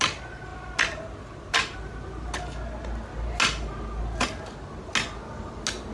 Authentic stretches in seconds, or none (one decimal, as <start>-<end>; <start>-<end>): 0.0-5.9